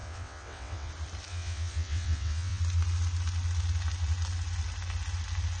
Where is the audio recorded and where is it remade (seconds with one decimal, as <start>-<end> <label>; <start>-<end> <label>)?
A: 0.0-0.9 remade; 0.9-1.3 recorded; 1.3-2.6 remade; 2.6-5.6 recorded